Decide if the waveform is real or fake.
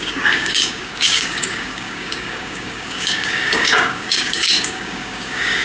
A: fake